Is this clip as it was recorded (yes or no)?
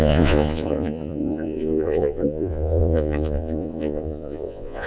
no